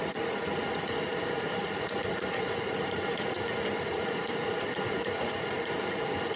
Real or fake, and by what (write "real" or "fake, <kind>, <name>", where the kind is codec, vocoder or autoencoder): fake, vocoder, Vocos